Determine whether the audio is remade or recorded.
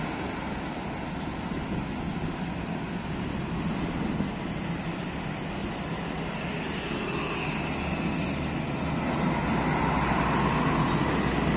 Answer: recorded